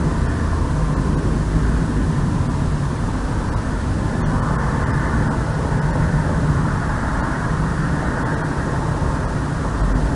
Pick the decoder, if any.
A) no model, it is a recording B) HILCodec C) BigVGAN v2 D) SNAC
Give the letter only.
A